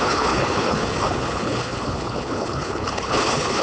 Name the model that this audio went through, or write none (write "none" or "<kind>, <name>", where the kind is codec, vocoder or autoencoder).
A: codec, HILCodec